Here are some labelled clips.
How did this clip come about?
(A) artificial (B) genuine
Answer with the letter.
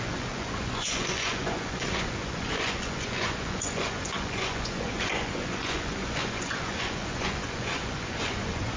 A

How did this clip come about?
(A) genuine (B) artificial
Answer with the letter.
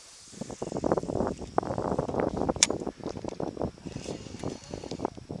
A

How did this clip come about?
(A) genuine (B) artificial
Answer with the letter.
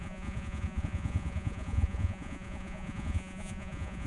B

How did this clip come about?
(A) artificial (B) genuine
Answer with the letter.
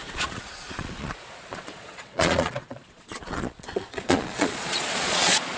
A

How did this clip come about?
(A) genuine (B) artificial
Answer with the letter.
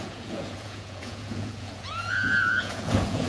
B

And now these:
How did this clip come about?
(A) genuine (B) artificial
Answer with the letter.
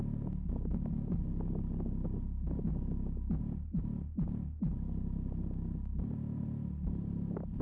A